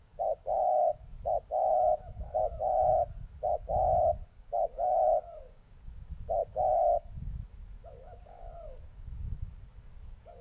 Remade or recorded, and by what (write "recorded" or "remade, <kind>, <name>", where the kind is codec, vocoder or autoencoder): remade, codec, DAC